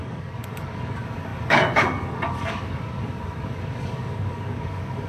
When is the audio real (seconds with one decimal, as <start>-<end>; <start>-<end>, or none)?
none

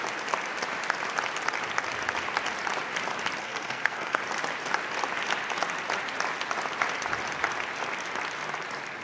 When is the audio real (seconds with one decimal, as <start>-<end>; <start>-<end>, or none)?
0.0-3.4; 4.2-9.0

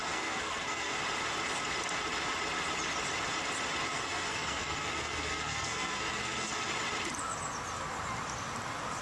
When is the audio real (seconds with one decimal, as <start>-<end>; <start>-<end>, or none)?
1.0-3.9; 6.7-9.0

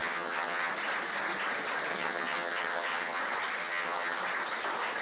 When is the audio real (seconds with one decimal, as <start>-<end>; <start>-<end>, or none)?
0.7-1.9; 3.2-3.6; 4.2-5.0

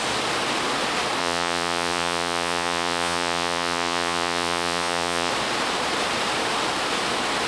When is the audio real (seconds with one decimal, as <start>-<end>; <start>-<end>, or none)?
0.0-1.2; 5.3-7.5

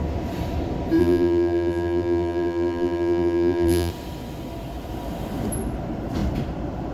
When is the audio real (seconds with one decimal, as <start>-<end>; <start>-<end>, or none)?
0.0-1.0; 3.9-6.9